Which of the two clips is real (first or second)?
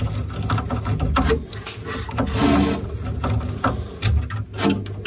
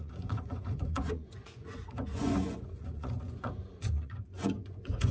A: first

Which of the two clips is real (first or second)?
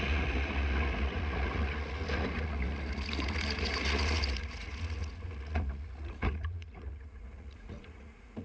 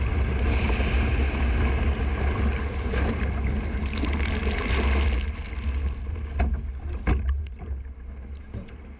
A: second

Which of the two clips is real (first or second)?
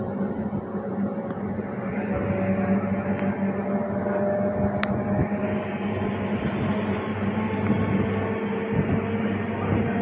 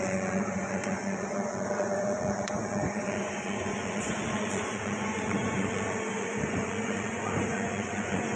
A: first